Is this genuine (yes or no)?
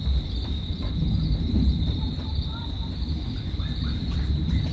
no